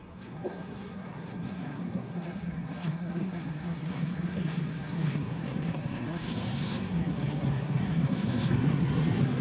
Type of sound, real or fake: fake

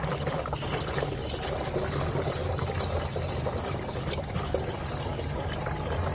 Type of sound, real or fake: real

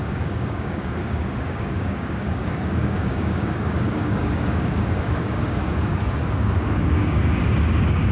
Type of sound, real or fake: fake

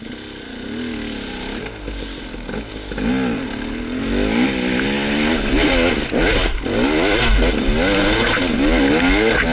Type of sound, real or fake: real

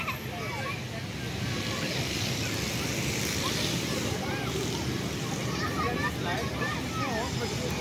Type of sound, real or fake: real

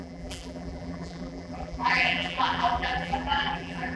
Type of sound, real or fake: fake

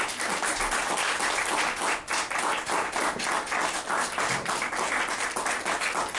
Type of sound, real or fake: real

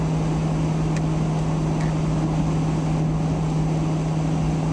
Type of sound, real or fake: real